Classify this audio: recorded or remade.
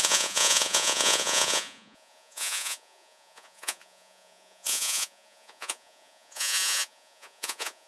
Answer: remade